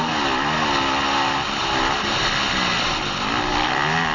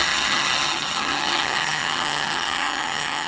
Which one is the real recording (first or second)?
first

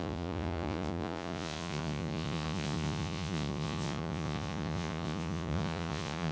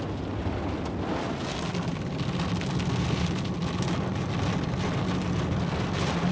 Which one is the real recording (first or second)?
second